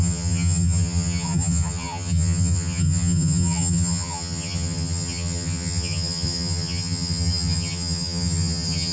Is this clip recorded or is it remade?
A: remade